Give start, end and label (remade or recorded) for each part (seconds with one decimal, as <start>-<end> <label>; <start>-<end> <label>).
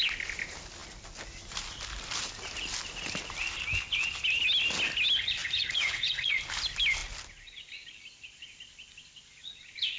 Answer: 0.0-5.4 recorded; 5.4-6.4 remade; 6.4-10.0 recorded